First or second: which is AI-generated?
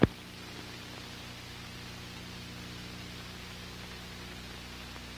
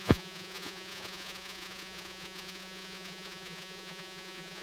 second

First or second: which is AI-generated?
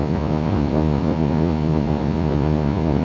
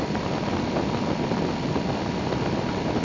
first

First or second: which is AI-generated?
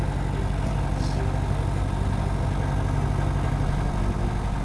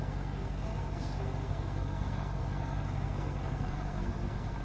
second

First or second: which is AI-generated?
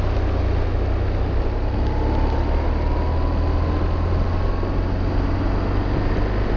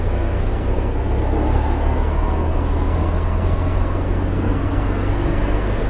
second